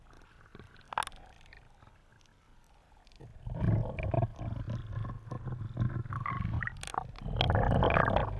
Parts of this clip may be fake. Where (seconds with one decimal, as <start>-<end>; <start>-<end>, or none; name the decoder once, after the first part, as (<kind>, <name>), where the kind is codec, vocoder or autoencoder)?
none